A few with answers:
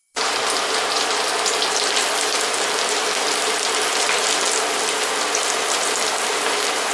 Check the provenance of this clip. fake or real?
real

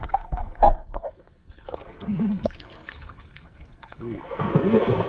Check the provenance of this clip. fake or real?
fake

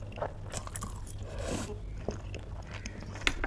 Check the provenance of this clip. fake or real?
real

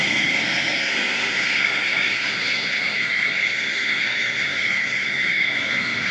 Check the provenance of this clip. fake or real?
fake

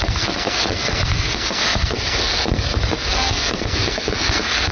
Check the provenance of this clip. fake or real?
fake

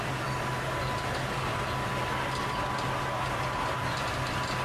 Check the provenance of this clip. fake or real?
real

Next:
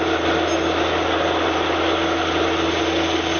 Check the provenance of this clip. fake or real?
real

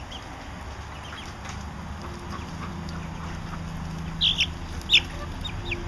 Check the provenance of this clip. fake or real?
real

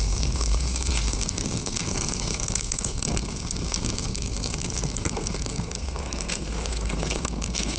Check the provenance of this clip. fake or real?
fake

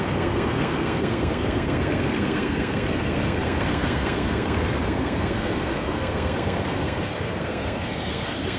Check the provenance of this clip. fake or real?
fake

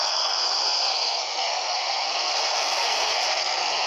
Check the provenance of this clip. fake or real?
fake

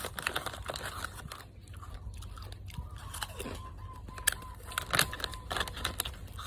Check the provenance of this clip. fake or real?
real